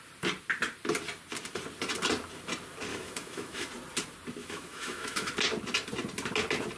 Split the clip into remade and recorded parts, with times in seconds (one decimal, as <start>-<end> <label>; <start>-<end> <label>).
0.0-2.9 recorded; 2.9-3.7 remade; 3.7-4.4 recorded; 4.4-5.3 remade; 5.3-6.8 recorded